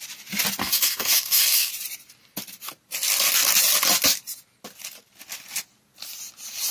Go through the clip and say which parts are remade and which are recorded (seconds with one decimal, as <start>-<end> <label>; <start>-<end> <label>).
0.0-0.6 recorded; 0.6-1.7 remade; 1.7-6.7 recorded